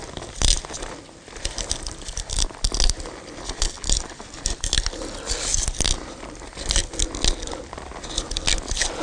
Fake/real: real